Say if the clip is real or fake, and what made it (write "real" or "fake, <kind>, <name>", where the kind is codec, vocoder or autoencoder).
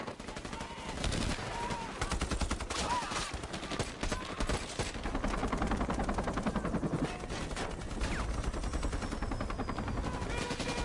real